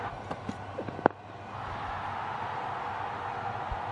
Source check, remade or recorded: recorded